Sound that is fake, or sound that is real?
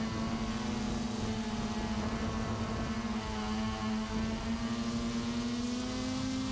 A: real